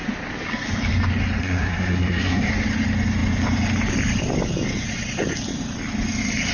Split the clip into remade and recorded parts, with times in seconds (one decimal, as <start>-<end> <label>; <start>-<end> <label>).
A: 0.0-1.4 recorded; 1.4-2.5 remade; 2.5-6.5 recorded